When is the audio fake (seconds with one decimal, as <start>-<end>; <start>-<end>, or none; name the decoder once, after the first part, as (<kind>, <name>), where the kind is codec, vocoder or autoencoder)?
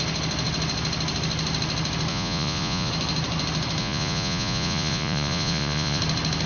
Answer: 2.1-2.9 (vocoder, Vocos); 3.8-6.0